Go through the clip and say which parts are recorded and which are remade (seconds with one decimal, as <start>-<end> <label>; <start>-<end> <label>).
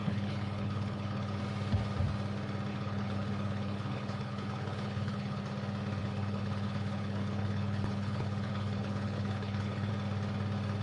0.0-1.4 remade; 1.4-2.7 recorded; 2.7-5.4 remade; 5.4-6.0 recorded; 6.0-9.9 remade; 9.9-10.8 recorded